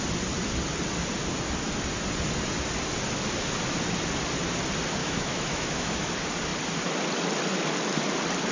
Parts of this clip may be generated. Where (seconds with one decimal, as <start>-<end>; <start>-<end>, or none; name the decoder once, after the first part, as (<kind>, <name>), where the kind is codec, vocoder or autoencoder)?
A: 5.0-6.1 (autoencoder, DAC-VAE)